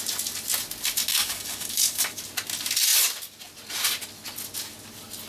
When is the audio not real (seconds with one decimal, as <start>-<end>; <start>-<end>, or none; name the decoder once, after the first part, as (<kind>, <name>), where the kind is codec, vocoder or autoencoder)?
1.1-2.2 (codec, DAC)